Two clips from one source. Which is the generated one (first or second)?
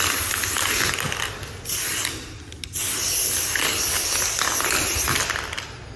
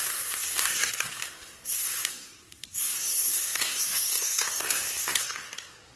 second